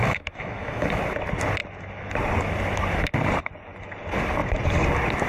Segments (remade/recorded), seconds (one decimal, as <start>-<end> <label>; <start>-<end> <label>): 0.0-1.0 remade; 1.0-5.3 recorded